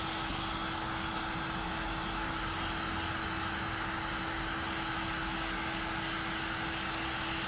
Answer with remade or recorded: recorded